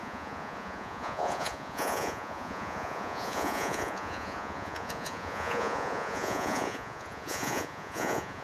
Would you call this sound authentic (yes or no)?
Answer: no